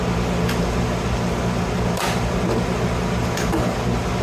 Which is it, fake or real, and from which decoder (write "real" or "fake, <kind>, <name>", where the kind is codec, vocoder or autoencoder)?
real